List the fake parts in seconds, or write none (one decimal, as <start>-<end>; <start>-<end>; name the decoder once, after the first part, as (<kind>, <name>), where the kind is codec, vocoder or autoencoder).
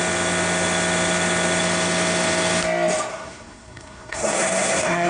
3.1-5.1 (codec, SNAC)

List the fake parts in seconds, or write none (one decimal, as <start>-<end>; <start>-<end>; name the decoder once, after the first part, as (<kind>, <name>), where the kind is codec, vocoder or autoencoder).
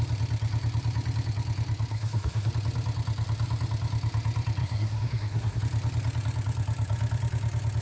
1.9-2.5 (codec, SNAC); 4.6-5.6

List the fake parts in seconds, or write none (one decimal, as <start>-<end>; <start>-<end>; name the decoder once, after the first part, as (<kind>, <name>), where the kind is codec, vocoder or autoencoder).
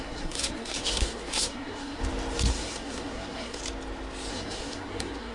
0.0-2.0 (codec, SNAC); 2.5-3.6; 4.3-5.3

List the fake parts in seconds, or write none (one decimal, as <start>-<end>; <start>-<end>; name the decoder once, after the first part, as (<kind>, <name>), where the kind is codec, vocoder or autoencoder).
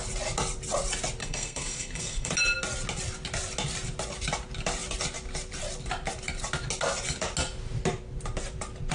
1.2-2.3 (codec, SNAC)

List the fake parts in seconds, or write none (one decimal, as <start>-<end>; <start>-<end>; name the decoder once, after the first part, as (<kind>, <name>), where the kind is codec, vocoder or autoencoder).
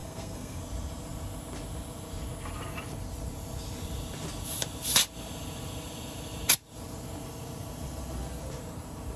0.0-0.6 (codec, SNAC)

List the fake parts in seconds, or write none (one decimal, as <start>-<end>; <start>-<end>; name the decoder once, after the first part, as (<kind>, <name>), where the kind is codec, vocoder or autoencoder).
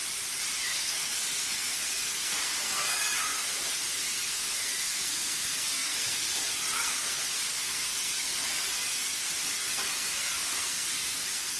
0.6-11.6 (codec, SNAC)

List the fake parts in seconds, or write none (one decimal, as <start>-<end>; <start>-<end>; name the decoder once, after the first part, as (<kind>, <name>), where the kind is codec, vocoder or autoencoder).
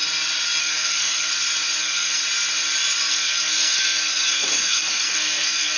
0.6-1.3 (codec, SNAC); 1.8-2.2; 3.1-5.8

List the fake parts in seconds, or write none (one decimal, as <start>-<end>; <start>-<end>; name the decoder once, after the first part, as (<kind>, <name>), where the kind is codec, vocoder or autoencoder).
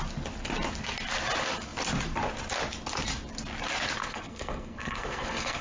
4.0-5.6 (codec, SNAC)